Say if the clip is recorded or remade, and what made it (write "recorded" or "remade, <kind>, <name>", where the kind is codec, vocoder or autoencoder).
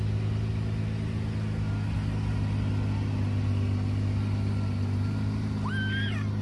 recorded